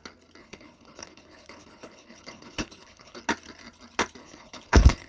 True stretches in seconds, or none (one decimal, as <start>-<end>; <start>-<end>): 0.0-0.4; 3.2-4.2